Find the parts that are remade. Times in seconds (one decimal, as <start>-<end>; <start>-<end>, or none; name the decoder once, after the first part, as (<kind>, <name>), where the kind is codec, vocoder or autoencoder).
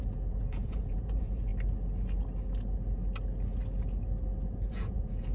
0.0-1.5 (vocoder, Vocos); 4.7-5.3